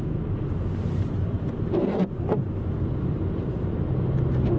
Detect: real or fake fake